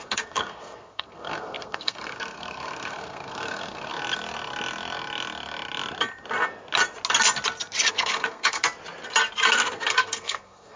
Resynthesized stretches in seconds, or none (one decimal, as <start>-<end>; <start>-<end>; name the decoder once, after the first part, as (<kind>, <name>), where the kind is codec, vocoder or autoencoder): 0.0-3.9 (codec, SNAC); 7.9-8.6; 9.5-10.8